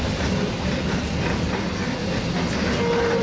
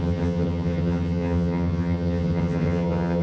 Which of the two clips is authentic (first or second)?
first